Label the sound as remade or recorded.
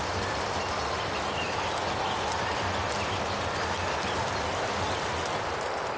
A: recorded